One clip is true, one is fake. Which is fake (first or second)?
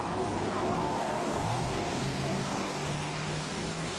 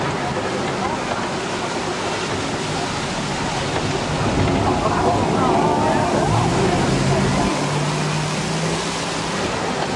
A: first